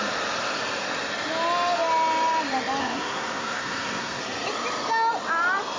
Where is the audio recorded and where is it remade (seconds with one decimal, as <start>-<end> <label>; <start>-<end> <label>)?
0.0-2.8 recorded; 2.8-4.2 remade; 4.2-5.8 recorded